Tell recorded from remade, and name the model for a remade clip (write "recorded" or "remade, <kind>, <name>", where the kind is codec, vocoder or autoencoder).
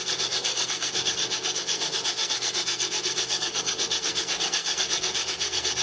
remade, codec, SNAC